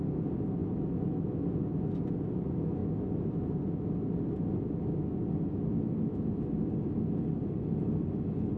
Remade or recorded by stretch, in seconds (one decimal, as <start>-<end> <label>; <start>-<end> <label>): 0.0-8.6 recorded